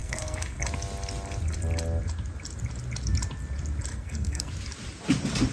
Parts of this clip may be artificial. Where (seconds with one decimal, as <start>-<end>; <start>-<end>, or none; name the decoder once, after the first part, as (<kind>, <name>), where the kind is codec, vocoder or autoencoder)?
0.0-0.6 (codec, SNAC); 3.9-4.5